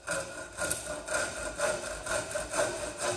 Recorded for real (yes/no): yes